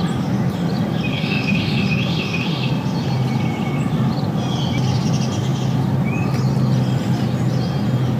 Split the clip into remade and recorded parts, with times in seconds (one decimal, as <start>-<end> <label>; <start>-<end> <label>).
0.0-1.1 recorded; 1.1-2.7 remade; 2.7-8.2 recorded